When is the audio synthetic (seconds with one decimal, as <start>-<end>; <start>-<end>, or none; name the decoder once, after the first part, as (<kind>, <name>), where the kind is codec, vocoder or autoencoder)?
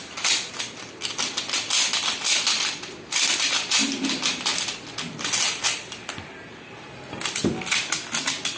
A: none